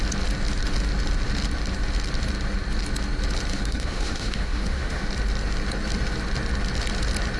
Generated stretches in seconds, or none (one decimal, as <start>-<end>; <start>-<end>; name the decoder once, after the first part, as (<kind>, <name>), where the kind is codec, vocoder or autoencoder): 3.5-5.1 (autoencoder, DAC-VAE)